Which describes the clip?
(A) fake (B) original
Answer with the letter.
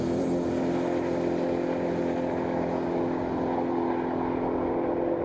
B